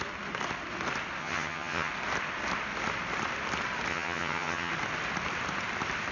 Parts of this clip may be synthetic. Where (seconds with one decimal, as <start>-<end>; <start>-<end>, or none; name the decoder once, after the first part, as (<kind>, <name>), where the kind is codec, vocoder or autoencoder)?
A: 1.2-1.9 (vocoder, HiFi-GAN); 3.9-4.7